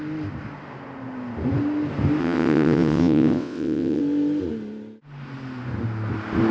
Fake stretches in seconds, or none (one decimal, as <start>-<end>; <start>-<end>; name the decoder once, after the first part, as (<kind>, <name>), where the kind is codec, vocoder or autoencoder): 2.2-4.0 (vocoder, WaveNeXt)